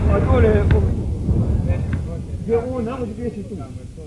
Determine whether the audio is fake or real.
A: real